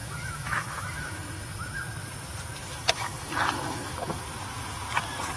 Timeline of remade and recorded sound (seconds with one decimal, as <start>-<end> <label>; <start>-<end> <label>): 0.0-1.8 remade; 1.8-2.6 recorded; 2.6-4.2 remade; 4.2-5.4 recorded